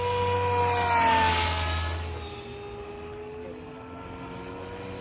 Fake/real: real